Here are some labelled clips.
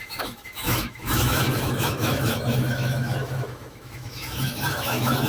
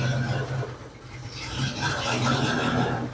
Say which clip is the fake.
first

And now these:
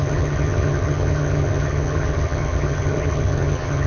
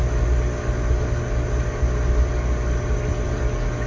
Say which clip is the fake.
first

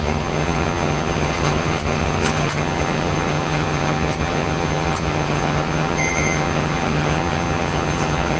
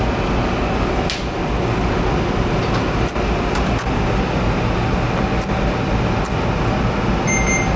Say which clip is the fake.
first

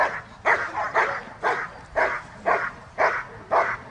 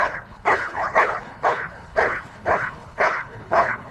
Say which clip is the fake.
second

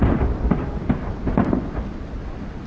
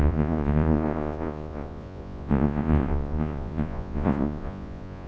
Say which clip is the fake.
second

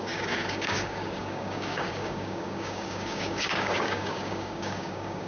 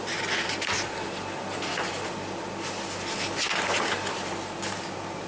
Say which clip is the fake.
first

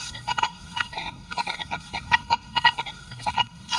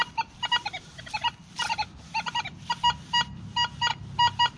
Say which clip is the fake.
first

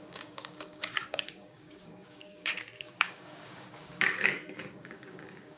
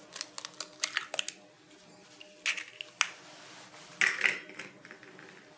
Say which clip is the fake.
first